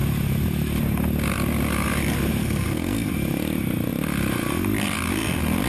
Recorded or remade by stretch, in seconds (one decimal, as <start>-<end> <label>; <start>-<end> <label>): 0.0-2.4 recorded; 2.4-3.1 remade; 3.1-5.7 recorded